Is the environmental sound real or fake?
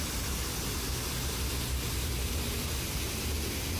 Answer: real